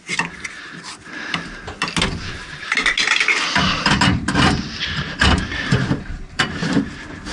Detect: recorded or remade recorded